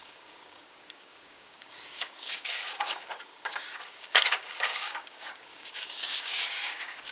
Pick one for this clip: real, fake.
fake